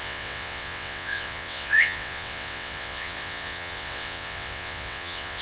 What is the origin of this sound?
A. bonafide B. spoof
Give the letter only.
B